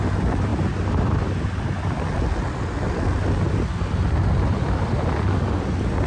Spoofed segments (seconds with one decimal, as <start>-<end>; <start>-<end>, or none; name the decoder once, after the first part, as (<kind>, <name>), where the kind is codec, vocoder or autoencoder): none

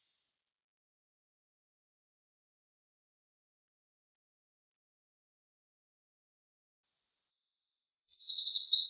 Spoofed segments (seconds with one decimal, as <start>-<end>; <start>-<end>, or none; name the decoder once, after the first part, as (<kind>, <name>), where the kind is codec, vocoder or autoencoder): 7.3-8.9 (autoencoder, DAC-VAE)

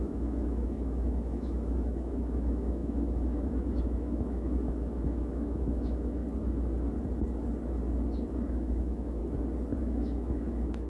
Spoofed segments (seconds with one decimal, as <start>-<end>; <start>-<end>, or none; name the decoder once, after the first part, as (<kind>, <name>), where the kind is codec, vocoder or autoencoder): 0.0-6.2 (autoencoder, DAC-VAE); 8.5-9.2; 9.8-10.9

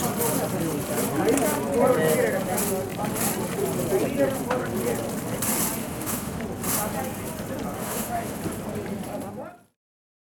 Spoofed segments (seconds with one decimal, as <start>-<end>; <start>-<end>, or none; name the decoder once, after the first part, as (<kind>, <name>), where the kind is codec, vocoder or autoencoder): 5.8-6.4 (autoencoder, DAC-VAE); 7.8-8.4

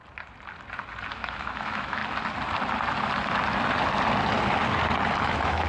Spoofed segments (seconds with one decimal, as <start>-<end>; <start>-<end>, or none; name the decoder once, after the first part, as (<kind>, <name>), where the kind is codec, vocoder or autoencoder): 1.1-2.0 (autoencoder, DAC-VAE); 5.2-5.7

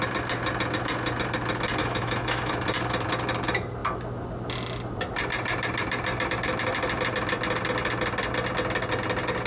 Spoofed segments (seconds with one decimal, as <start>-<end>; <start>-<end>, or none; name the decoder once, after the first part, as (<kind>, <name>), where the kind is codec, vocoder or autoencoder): 1.8-2.5 (autoencoder, DAC-VAE)

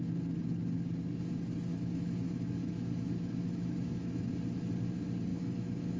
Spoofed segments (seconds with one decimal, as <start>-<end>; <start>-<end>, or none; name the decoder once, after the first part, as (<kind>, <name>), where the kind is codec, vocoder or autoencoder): 1.7-4.3 (autoencoder, DAC-VAE); 5.3-6.0

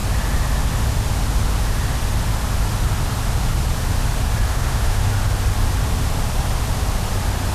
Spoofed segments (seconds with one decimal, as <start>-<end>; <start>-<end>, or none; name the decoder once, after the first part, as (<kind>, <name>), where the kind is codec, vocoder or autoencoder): 4.5-5.0 (autoencoder, DAC-VAE)